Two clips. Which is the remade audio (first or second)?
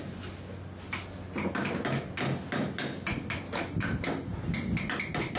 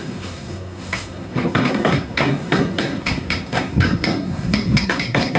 second